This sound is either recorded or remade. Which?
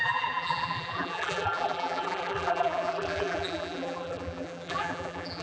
remade